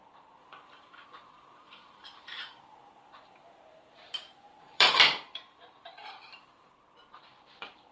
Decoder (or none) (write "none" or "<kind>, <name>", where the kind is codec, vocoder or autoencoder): vocoder, BigVGAN v2